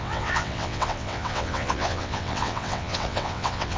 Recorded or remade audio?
remade